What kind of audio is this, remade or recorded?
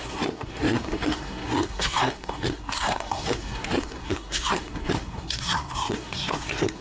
remade